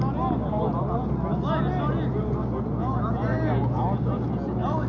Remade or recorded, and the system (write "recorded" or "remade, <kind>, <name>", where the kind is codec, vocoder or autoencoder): recorded